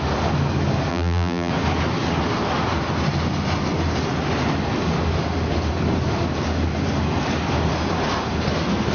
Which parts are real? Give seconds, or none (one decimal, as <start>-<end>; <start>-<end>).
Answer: 0.0-0.9; 1.5-8.9